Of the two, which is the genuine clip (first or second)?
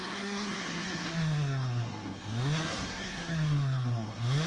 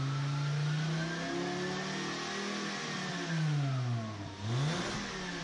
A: second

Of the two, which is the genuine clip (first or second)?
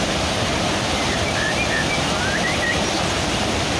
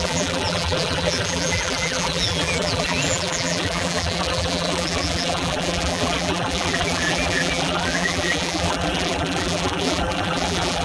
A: first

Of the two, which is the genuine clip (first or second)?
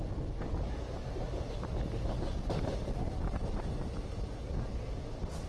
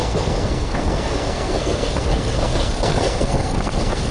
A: first